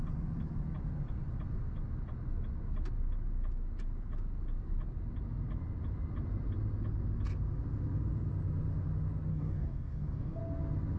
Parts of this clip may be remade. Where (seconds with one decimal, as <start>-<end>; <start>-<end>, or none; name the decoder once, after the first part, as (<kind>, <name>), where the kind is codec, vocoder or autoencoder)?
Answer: 9.3-10.4 (codec, DAC)